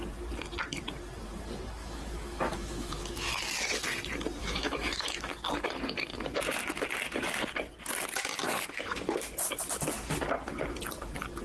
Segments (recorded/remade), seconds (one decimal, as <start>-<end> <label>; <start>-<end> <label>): 0.0-1.8 recorded; 1.8-3.4 remade; 3.4-4.4 recorded; 4.4-5.3 remade; 5.3-8.4 recorded; 8.4-9.0 remade; 9.0-11.4 recorded